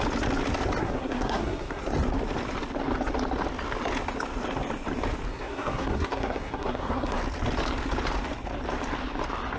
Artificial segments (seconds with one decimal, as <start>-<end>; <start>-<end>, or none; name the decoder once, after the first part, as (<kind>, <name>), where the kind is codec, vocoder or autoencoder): 0.8-1.8 (codec, SNAC); 5.3-7.2